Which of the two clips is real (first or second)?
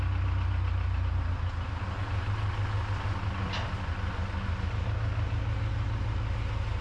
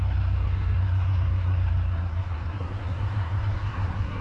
first